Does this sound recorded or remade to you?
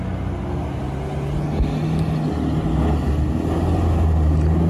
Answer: recorded